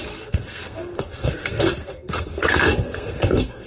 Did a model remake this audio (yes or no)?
yes